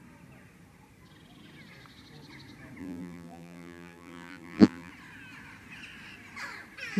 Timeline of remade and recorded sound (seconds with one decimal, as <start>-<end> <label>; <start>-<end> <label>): 0.0-2.8 recorded; 2.8-4.9 remade; 4.9-7.0 recorded